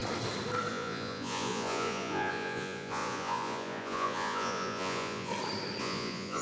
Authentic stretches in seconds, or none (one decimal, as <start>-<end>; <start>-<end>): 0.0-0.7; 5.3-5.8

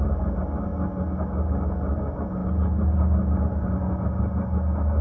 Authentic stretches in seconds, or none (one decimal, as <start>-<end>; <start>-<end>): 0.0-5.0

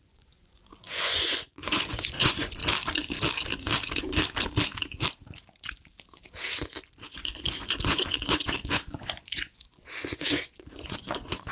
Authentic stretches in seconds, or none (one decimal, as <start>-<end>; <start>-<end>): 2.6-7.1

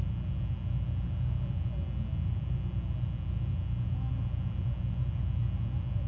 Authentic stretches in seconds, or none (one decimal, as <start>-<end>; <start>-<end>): 0.0-6.1